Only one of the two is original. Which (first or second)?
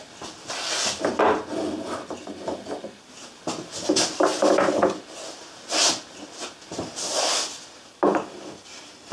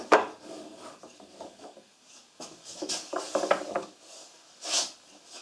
first